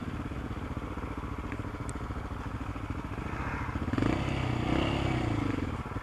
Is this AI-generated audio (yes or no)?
no